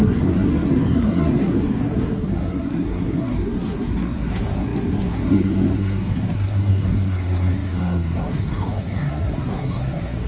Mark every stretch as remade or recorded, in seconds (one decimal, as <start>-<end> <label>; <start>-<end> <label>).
0.0-10.3 remade